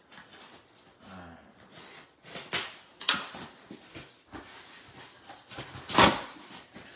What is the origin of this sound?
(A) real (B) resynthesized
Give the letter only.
A